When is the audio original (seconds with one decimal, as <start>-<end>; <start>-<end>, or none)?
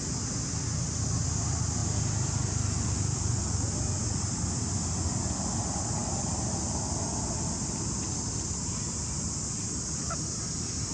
0.0-10.9